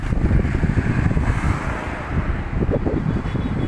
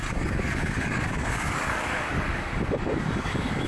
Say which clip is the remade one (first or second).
second